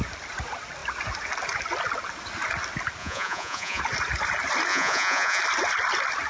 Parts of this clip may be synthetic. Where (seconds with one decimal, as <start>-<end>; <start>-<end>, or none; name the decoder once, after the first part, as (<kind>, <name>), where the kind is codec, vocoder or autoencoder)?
3.0-3.8 (vocoder, Vocos); 4.7-5.4